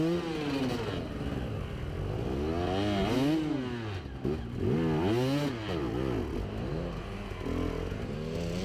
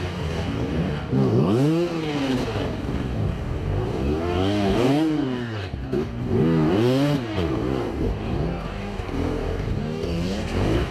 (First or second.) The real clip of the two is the first